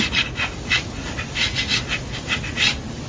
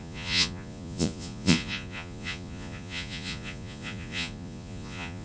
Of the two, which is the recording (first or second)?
first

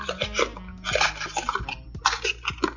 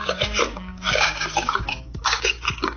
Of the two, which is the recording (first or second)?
first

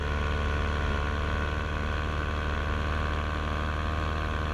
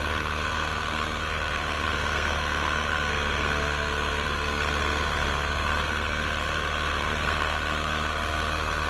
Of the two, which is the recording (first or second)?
first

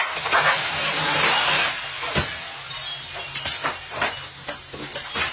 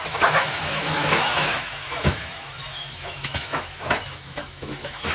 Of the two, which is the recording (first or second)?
first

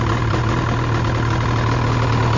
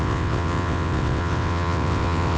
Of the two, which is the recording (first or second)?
first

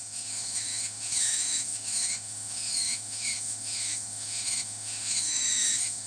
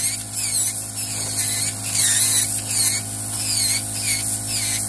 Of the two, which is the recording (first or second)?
second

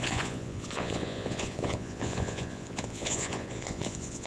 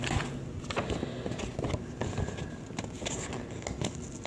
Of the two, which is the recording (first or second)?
second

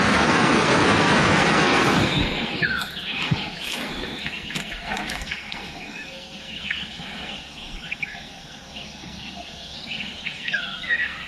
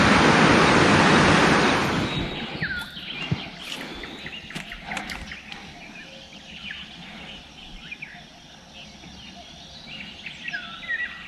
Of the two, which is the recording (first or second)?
second